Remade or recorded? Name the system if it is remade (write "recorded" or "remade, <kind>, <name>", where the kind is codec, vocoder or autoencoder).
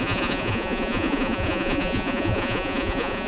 remade, vocoder, Vocos